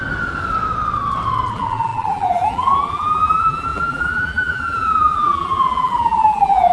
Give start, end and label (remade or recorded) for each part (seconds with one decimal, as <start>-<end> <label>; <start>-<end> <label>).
0.0-1.5 recorded; 1.5-6.7 remade